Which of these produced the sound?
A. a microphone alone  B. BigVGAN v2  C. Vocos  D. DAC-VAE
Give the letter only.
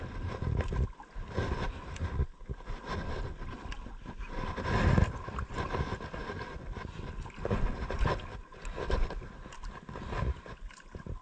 A